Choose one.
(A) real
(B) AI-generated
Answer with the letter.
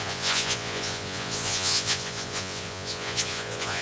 B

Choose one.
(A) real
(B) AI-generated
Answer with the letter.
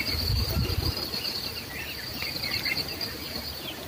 A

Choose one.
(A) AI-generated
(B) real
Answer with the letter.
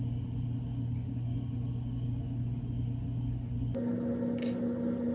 B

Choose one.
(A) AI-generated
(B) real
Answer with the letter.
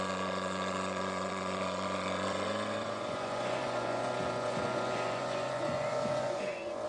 A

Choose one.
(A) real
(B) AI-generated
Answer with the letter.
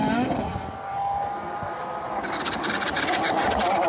A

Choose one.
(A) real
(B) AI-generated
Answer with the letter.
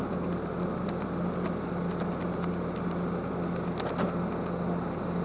A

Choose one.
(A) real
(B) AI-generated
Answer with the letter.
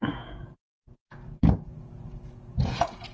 B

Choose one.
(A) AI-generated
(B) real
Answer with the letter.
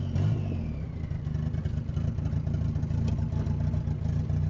B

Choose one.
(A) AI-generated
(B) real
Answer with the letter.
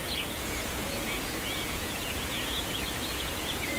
A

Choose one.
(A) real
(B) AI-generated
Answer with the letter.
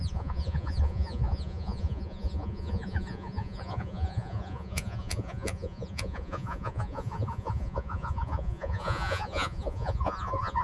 B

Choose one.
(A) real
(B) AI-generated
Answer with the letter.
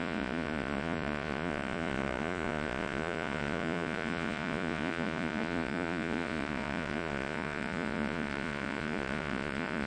B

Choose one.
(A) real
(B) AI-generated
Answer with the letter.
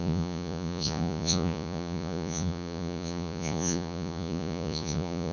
B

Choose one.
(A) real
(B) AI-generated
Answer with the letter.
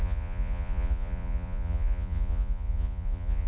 B